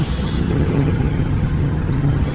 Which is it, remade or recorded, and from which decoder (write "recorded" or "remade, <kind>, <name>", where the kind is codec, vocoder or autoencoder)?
remade, vocoder, HiFi-GAN